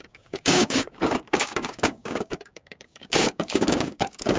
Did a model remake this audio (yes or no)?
yes